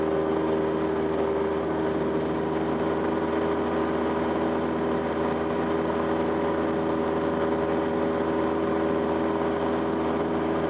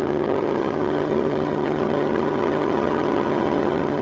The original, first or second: first